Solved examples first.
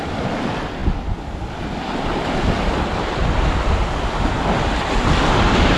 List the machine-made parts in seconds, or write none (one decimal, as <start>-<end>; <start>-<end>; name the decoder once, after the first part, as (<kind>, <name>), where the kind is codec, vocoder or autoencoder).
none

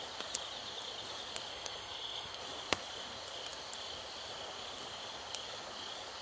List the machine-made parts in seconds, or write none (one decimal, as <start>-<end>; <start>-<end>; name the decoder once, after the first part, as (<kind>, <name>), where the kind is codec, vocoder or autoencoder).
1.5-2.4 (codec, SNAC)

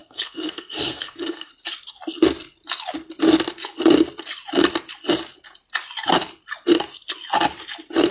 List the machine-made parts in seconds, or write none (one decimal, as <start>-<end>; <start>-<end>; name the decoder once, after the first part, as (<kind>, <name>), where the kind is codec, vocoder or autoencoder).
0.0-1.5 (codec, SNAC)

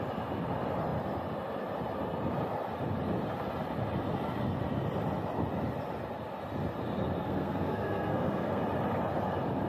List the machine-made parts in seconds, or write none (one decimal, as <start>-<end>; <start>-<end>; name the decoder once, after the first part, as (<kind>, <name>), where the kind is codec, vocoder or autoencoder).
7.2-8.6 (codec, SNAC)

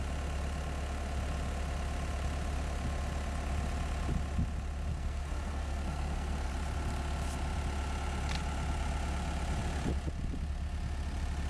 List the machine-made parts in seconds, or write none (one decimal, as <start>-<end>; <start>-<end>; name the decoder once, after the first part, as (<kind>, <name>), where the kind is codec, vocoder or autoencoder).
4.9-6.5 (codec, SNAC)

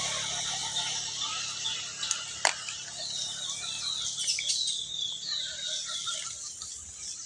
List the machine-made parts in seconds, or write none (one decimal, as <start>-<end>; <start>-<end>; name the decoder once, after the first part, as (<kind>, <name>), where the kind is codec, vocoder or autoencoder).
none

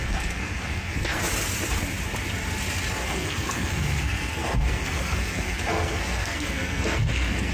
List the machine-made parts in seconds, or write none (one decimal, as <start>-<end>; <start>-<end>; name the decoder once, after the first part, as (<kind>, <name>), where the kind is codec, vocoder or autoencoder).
0.0-1.2 (codec, SNAC); 3.0-7.5